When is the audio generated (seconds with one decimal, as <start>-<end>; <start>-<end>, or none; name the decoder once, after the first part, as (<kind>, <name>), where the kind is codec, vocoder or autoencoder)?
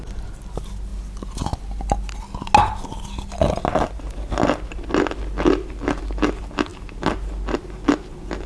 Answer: none